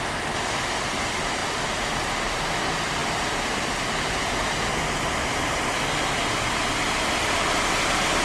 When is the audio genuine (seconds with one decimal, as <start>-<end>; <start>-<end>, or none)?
0.0-8.2